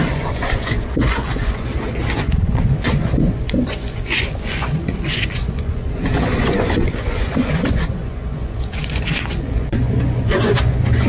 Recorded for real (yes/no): no